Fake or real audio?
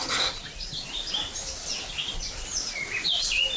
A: real